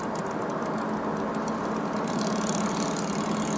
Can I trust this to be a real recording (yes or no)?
yes